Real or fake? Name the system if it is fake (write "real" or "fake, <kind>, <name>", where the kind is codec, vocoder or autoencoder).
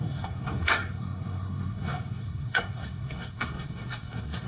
fake, codec, SNAC